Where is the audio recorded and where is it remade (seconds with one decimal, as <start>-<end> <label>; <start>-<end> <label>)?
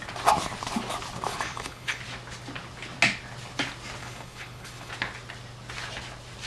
0.0-1.3 recorded; 1.3-2.0 remade; 2.0-4.0 recorded; 4.0-4.9 remade; 4.9-6.5 recorded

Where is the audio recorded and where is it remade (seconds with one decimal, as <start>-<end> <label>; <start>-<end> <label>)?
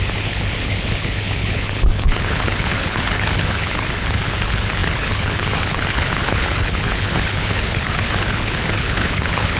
0.0-9.6 remade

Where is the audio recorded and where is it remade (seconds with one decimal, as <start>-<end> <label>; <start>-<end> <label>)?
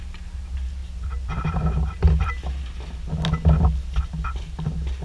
0.0-5.0 recorded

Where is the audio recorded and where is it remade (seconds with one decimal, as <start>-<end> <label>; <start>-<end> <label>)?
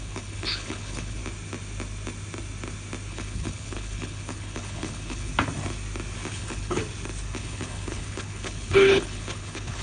0.0-1.2 remade; 1.2-3.1 recorded; 3.1-5.3 remade; 5.3-6.3 recorded; 6.3-6.8 remade; 6.8-7.4 recorded; 7.4-9.8 remade